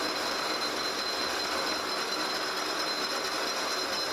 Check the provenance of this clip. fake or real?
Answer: real